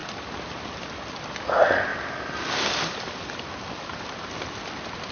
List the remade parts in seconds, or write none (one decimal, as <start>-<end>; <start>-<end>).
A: none